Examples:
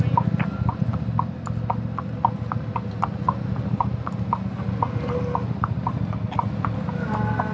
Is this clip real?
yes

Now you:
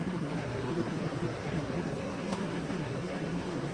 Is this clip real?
no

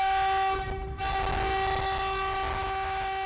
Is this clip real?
yes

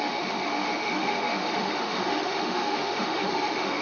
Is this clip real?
no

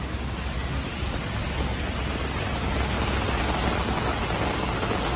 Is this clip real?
yes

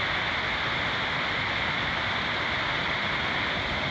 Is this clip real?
yes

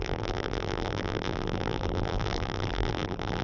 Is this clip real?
no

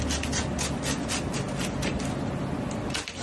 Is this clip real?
yes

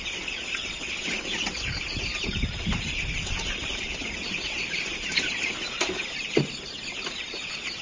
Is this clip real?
yes